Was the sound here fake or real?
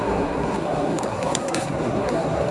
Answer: fake